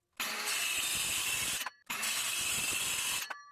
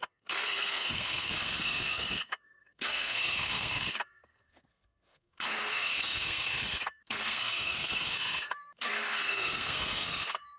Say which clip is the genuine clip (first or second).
first